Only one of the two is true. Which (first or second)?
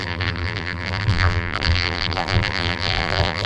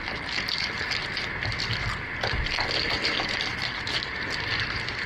second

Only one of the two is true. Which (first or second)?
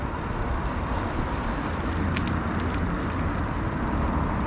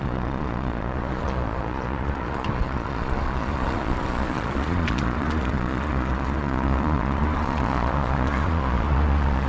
first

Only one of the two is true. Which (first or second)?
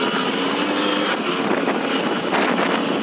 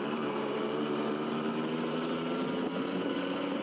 first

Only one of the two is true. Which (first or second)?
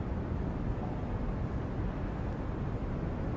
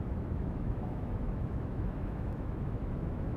first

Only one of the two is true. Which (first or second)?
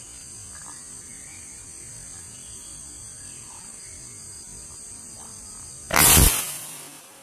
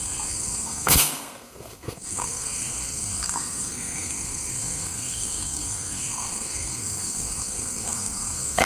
first